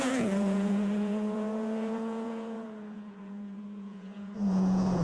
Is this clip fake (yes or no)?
yes